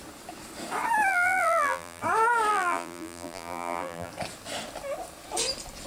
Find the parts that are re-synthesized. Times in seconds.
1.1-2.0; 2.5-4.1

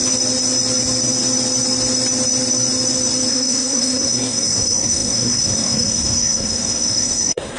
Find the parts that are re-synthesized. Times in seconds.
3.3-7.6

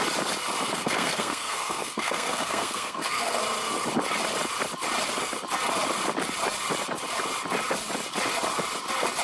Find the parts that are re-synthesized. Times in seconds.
0.7-3.4

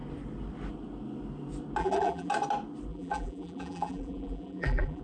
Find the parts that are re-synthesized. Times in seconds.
1.8-2.3; 2.9-5.0

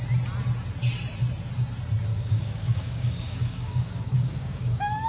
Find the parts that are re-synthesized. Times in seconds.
2.1-5.1

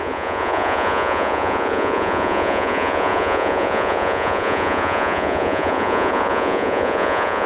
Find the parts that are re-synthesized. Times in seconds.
0.0-7.5

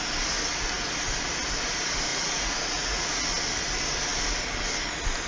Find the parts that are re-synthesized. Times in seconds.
2.1-3.2